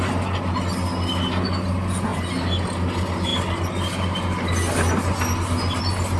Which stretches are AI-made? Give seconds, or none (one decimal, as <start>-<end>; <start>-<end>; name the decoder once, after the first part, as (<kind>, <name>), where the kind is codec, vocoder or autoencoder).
none